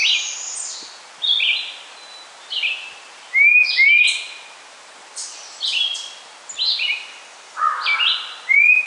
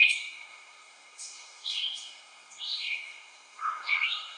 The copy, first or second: second